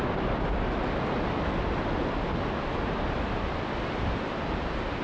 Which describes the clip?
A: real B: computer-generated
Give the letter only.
A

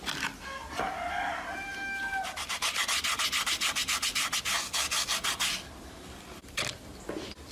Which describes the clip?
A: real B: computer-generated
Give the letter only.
A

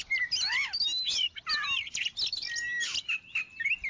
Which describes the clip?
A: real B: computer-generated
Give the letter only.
A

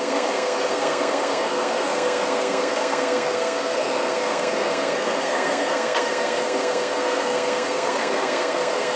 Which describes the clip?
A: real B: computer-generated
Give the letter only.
B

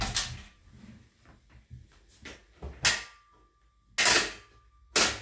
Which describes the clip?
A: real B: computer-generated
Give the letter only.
A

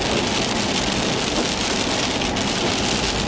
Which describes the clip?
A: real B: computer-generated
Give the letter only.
A